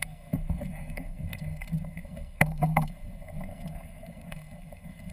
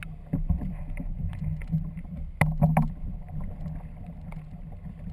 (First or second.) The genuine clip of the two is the second